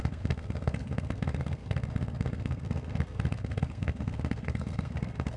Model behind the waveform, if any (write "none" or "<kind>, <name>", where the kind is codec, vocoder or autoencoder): codec, SNAC